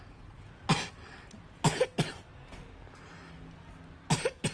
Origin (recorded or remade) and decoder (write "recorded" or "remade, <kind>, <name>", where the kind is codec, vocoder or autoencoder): recorded